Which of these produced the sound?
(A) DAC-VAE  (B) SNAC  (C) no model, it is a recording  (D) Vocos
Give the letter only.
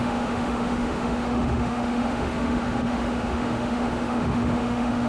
A